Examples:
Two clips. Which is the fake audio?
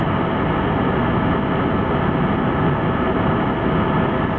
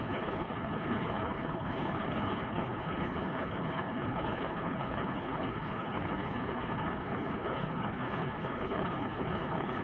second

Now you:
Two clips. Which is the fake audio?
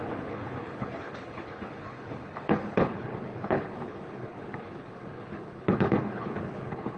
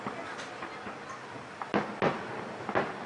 first